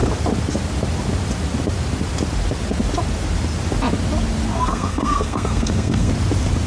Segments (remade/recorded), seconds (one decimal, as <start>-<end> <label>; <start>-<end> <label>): 0.0-4.5 recorded; 4.5-6.1 remade; 6.1-6.7 recorded